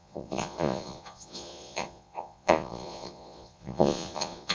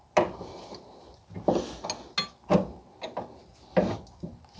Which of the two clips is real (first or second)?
second